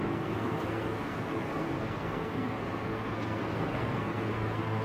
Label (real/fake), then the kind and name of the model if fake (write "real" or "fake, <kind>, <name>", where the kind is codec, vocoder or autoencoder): fake, codec, SNAC